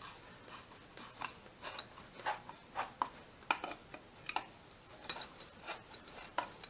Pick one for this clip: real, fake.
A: real